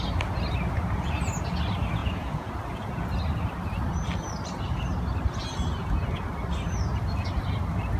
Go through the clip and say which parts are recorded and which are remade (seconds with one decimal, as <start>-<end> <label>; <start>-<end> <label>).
0.0-2.0 recorded; 2.0-2.5 remade; 2.5-8.0 recorded